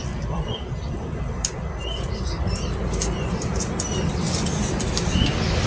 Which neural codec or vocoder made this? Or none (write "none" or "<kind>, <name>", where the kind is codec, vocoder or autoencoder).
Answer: vocoder, BigVGAN v2